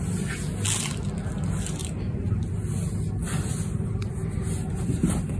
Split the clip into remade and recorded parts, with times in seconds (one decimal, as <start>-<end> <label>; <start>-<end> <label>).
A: 0.0-5.4 recorded